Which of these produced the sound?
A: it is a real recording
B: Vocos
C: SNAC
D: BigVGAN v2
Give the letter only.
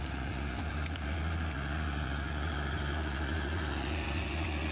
B